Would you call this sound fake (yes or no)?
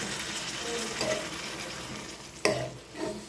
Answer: no